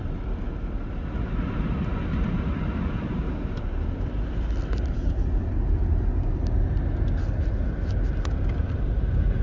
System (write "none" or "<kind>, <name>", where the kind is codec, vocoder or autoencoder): none